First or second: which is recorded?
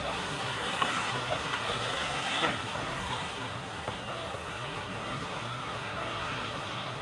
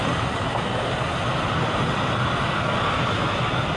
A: second